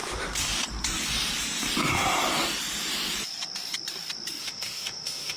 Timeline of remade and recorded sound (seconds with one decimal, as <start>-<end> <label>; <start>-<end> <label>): 0.0-4.4 recorded; 4.4-5.4 remade